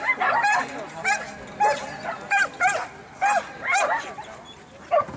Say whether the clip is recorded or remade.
recorded